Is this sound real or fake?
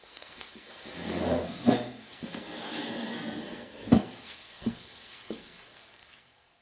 fake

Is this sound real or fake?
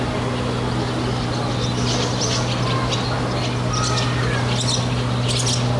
real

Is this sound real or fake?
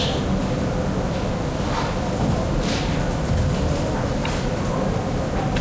real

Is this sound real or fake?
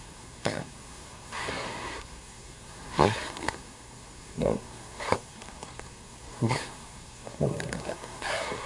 fake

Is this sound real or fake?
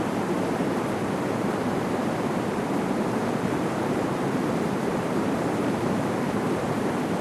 fake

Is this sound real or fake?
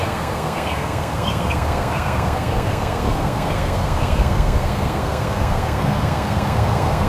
fake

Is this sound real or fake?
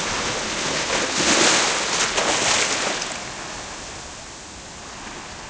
real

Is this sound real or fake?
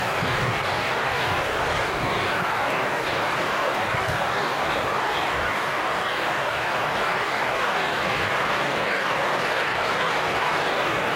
fake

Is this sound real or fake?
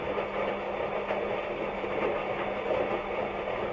real